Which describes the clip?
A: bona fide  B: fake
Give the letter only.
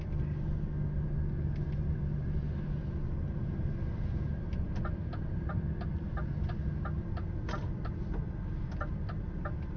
A